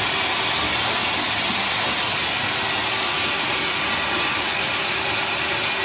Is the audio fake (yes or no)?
no